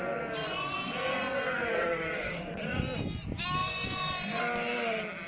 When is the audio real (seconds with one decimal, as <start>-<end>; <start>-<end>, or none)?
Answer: 0.0-0.4; 2.7-3.6; 4.4-5.3

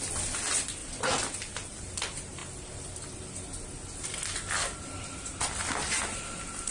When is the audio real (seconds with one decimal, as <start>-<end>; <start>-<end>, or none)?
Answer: 0.0-6.7

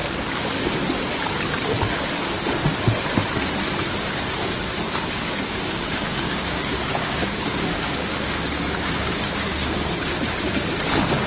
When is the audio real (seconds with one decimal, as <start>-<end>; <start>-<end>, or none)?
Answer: 0.0-5.2; 10.0-11.3

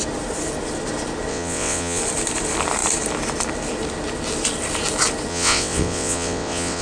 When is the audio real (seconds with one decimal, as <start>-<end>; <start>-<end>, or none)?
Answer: 0.0-1.3; 2.0-5.3

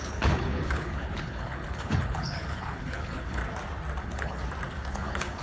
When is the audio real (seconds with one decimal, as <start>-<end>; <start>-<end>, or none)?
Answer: 3.4-4.0; 4.4-4.9